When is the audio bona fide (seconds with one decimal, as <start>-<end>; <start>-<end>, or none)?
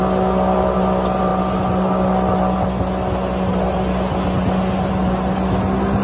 0.0-6.0